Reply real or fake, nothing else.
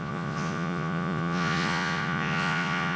fake